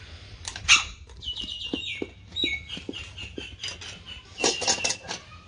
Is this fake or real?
real